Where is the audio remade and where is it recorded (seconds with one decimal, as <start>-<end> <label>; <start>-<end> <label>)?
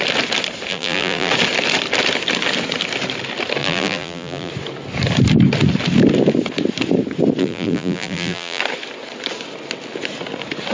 0.0-0.7 recorded; 0.7-1.3 remade; 1.3-3.6 recorded; 3.6-4.5 remade; 4.5-7.4 recorded; 7.4-8.6 remade; 8.6-10.7 recorded